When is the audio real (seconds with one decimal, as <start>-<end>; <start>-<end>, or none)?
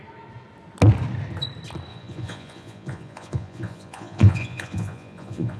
0.0-1.9